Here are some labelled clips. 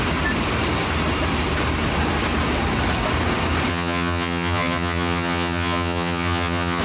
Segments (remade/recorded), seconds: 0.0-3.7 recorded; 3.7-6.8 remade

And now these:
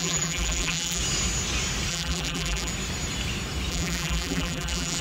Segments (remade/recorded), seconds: 0.0-1.0 remade; 1.0-1.9 recorded; 1.9-2.7 remade; 2.7-3.7 recorded; 3.7-5.0 remade

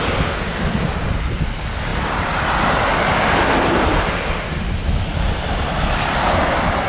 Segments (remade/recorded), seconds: 0.0-6.9 recorded

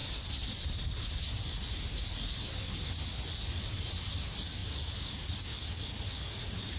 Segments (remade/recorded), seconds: 0.0-6.8 recorded